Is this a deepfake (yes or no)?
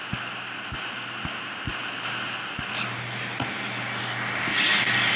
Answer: no